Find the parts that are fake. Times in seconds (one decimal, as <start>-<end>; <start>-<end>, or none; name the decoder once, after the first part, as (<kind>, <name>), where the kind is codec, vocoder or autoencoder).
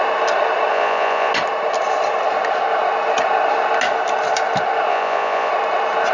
0.7-1.3 (vocoder, Vocos); 4.9-5.5